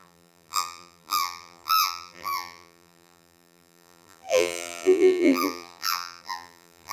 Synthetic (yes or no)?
yes